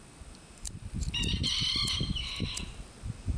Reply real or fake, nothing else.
real